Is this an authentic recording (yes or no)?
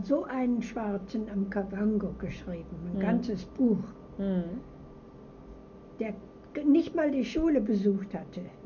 yes